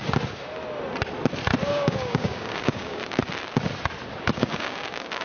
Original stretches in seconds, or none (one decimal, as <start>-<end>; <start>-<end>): 0.0-1.7; 3.0-4.2